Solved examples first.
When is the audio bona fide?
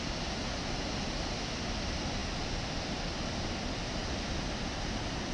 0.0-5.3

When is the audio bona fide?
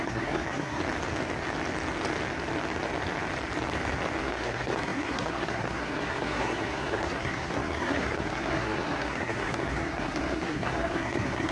0.8-4.2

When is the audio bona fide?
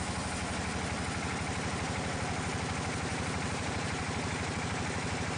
0.0-3.1; 4.6-5.4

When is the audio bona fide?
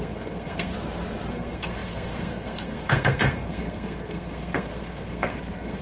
0.7-1.3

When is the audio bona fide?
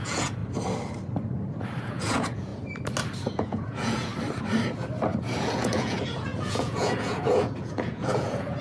0.4-1.8; 2.5-3.3; 4.1-5.2